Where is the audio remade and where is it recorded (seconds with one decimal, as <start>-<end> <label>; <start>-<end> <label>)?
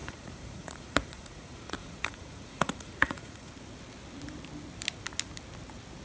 0.0-3.5 remade; 3.5-6.0 recorded